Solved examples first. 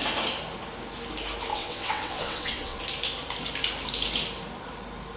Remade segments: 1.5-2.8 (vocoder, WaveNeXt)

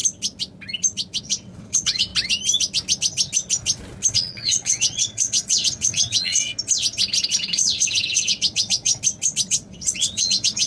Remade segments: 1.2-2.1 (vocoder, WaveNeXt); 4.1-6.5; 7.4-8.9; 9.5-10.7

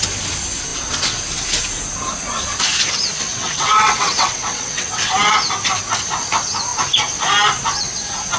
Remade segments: 3.3-5.1 (vocoder, WaveNeXt)